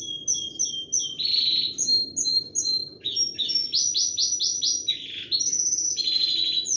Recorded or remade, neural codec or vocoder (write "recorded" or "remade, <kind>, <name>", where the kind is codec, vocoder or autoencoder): recorded